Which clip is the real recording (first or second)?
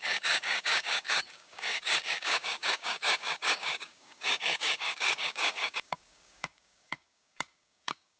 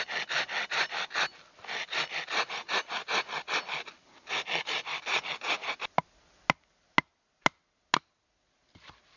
second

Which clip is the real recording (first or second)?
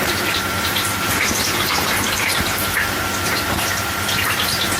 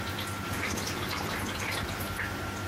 second